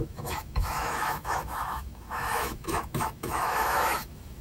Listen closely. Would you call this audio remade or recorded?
remade